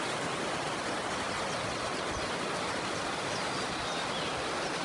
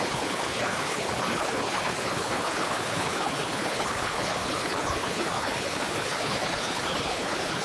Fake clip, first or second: second